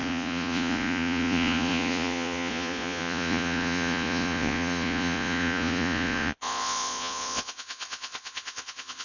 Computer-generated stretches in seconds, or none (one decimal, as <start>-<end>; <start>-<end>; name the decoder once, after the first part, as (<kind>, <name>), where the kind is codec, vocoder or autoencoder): 0.0-9.0 (vocoder, Vocos)